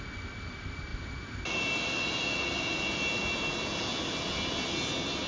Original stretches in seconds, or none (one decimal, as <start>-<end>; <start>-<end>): 0.0-5.3